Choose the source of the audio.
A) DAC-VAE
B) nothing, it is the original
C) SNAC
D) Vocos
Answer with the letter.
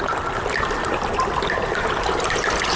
B